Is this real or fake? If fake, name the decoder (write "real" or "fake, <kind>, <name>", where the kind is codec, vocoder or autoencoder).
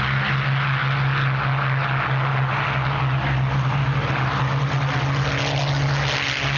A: real